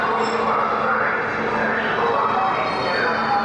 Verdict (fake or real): real